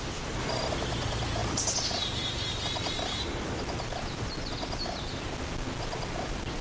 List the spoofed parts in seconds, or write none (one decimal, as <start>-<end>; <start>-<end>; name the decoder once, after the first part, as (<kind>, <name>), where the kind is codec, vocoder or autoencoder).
none